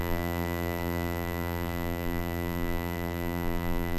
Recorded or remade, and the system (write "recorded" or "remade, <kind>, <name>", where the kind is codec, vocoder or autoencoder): remade, vocoder, BigVGAN v2